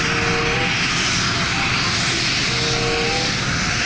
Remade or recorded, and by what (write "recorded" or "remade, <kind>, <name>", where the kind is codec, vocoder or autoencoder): recorded